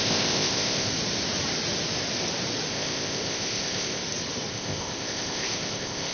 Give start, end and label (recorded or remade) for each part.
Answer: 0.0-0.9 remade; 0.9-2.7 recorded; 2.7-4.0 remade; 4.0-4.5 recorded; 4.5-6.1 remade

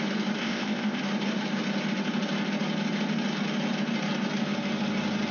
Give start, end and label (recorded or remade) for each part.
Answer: 0.0-0.4 recorded; 0.4-1.0 remade; 1.0-5.3 recorded

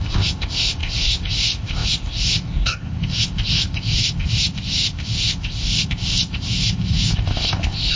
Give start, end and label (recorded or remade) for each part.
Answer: 0.0-8.0 remade

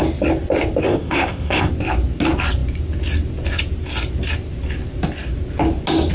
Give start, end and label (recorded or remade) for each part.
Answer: 0.0-0.8 recorded; 0.8-1.7 remade; 1.7-6.1 recorded

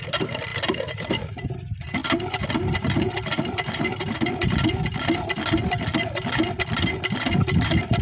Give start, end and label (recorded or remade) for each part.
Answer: 0.0-8.0 recorded